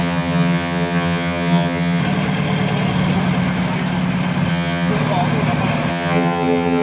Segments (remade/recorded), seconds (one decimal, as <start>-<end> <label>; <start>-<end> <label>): 0.0-2.0 remade; 2.0-4.5 recorded; 4.5-4.9 remade; 4.9-5.9 recorded; 5.9-6.8 remade